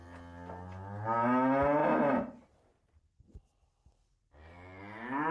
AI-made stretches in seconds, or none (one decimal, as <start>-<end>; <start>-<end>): none